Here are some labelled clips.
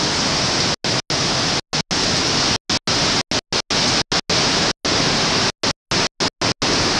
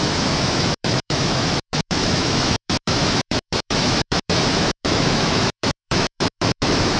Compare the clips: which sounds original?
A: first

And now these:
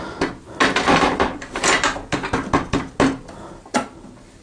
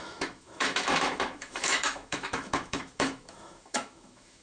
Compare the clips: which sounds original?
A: first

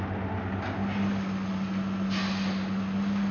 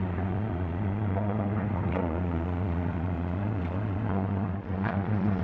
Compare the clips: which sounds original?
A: first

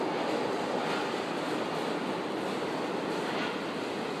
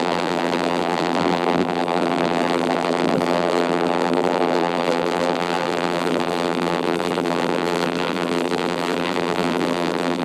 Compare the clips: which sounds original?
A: first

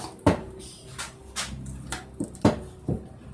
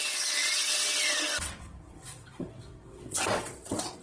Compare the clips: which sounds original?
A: first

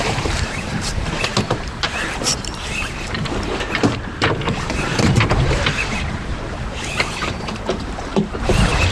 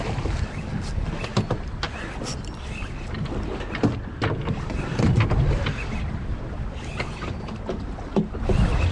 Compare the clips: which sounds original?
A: second